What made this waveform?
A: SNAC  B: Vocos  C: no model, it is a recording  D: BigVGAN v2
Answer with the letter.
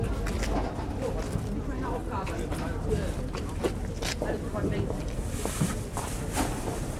D